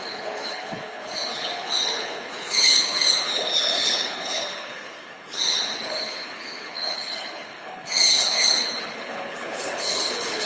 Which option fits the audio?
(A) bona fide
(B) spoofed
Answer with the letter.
B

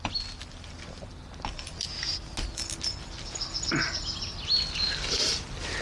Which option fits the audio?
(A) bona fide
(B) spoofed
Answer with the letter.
A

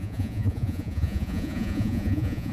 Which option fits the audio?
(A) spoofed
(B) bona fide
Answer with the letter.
A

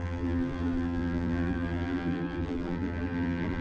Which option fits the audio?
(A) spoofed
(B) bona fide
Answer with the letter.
A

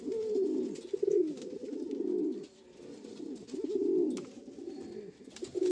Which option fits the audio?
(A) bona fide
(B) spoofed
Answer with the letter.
A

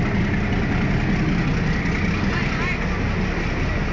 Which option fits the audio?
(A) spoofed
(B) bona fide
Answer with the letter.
B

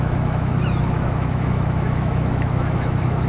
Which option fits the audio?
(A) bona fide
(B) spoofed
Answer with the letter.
B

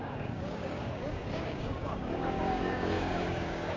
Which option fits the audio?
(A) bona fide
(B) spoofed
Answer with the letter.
B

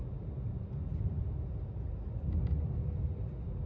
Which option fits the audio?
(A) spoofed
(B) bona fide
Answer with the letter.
B